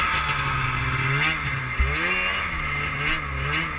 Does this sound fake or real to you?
real